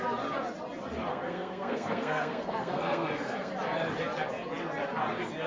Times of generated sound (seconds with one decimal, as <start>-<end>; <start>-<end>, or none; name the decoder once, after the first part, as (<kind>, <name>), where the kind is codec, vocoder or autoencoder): 1.1-3.5 (codec, SNAC)